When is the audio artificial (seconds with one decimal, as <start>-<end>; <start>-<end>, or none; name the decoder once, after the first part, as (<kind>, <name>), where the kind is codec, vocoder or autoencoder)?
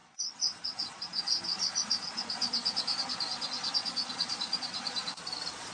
0.0-5.7 (vocoder, Vocos)